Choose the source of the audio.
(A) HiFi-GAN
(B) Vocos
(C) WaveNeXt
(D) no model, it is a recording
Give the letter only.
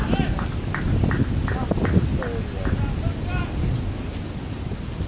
D